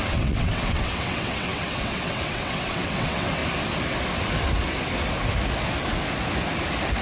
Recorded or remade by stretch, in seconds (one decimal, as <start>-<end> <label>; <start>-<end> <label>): 0.0-3.4 remade; 3.4-7.0 recorded